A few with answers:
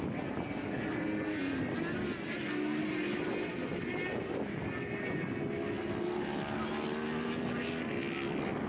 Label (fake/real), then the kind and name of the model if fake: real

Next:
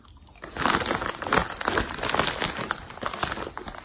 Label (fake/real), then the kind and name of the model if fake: real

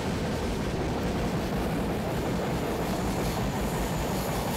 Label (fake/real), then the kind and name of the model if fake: fake, vocoder, BigVGAN v2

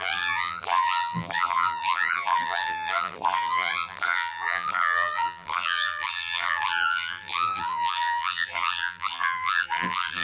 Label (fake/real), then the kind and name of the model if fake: fake, vocoder, BigVGAN v2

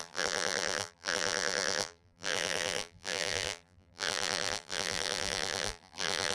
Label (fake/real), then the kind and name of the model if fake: fake, vocoder, BigVGAN v2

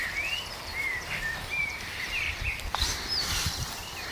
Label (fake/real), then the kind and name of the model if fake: fake, vocoder, BigVGAN v2